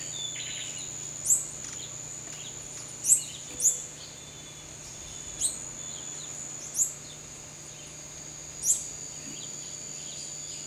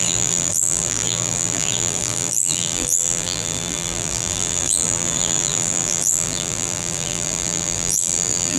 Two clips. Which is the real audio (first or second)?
first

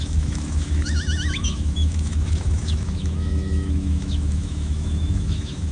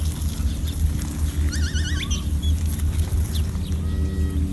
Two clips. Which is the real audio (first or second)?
second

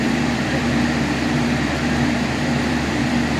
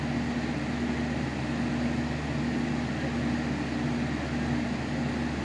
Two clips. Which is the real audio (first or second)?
second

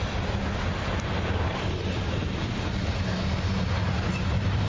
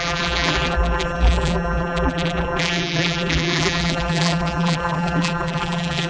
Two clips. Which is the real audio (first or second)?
first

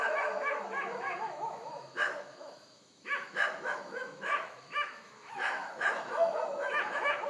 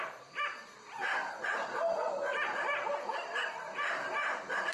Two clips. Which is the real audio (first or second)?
second